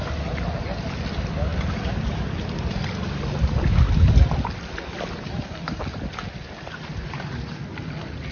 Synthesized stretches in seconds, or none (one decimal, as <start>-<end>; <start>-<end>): none